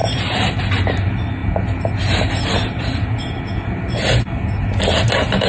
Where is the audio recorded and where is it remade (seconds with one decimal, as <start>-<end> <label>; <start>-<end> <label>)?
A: 0.0-0.6 remade; 0.6-1.4 recorded; 1.4-4.7 remade; 4.7-5.5 recorded